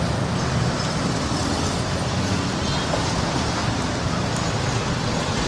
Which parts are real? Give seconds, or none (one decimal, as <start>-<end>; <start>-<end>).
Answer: 0.0-1.4; 4.7-5.5